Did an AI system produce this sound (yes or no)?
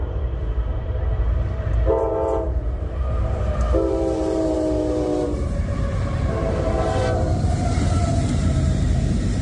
yes